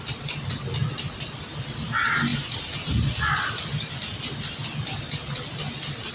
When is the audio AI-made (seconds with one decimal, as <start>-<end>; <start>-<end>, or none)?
none